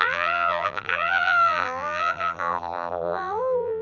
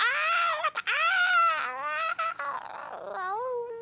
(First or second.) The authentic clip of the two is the second